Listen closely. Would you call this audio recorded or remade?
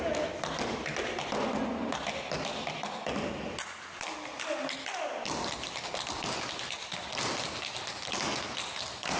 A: recorded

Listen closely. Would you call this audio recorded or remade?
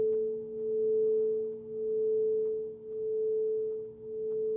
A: recorded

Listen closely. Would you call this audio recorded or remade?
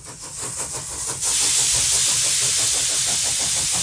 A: recorded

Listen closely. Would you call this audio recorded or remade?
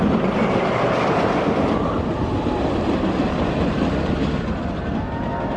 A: recorded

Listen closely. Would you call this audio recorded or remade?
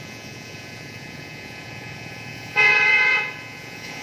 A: remade